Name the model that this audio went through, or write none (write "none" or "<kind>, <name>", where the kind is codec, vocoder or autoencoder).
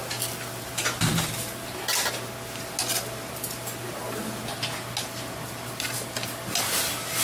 none